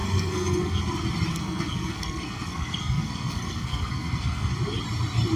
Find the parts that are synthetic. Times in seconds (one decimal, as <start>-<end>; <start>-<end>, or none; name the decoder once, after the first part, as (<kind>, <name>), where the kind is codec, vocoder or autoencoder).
0.0-0.8 (codec, SNAC); 1.3-4.5